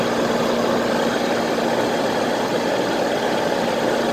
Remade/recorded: recorded